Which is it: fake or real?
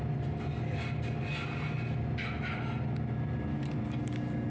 real